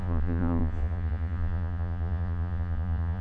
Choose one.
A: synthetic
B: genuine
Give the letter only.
A